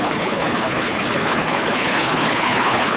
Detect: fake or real fake